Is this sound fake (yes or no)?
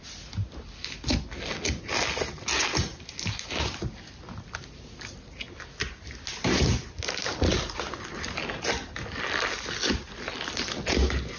no